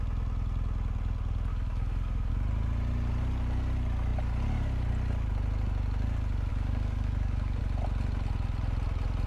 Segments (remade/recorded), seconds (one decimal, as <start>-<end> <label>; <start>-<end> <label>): 0.0-1.5 recorded; 1.5-2.3 remade; 2.3-6.5 recorded; 6.5-7.6 remade; 7.6-9.3 recorded